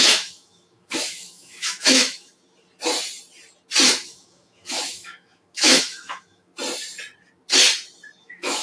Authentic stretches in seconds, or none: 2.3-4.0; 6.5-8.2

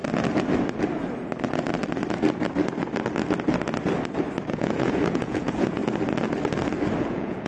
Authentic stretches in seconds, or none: 0.0-4.5; 5.8-7.0

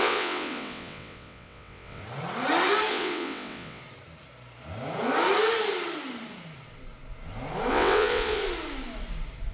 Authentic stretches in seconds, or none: 2.0-2.9; 3.8-7.7; 8.4-9.5